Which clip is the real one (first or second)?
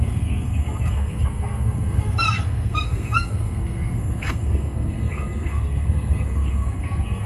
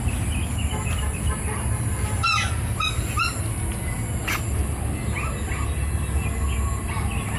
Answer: second